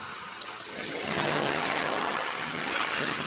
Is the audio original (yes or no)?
no